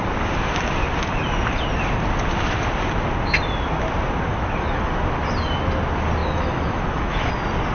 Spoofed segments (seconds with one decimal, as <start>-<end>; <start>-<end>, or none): 4.3-5.0; 6.2-7.3

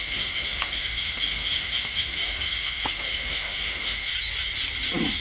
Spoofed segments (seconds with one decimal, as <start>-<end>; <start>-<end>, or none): 0.0-4.1

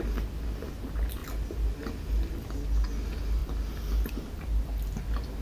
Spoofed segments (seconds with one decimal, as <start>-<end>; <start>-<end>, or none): none

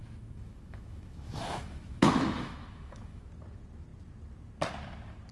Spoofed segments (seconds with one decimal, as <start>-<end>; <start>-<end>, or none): 0.0-3.2

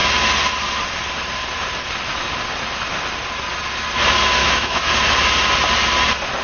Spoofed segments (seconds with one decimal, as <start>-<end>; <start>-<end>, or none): 4.4-4.9

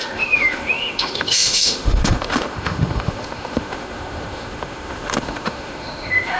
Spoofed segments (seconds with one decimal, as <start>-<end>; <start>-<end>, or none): 0.0-6.4

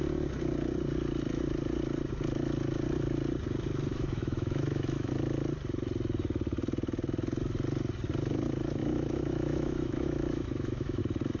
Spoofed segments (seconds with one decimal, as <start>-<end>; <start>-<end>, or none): 3.9-5.1; 8.8-11.0

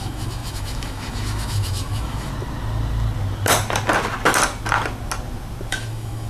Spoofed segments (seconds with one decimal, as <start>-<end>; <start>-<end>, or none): 0.0-2.3; 5.7-6.3